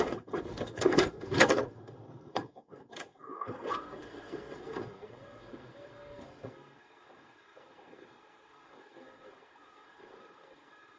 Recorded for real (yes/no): no